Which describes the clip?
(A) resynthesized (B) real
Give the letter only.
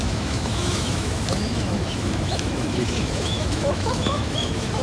A